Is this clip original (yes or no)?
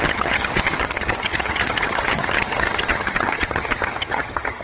no